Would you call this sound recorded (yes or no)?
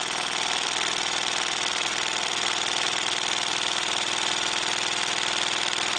yes